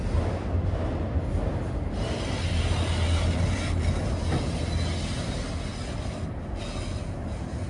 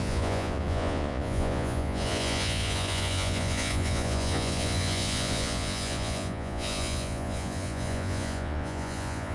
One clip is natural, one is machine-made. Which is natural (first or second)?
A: first